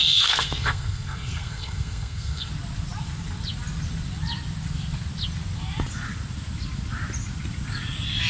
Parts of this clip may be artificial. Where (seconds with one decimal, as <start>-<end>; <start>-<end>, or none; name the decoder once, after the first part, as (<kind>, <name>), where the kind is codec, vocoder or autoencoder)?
0.0-2.5 (codec, SNAC)